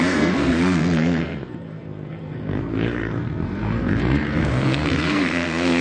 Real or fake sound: fake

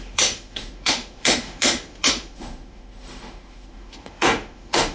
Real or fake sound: fake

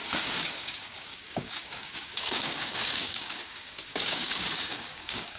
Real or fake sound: fake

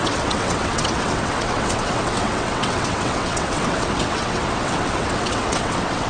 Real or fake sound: fake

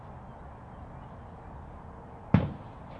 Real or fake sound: real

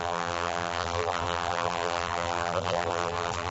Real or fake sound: fake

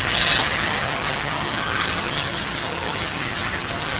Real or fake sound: fake